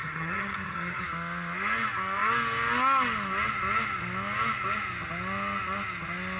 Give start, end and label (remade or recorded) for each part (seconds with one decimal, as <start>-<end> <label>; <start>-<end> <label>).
0.0-1.0 remade; 1.0-6.4 recorded